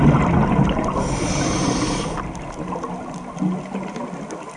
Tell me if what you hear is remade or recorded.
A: recorded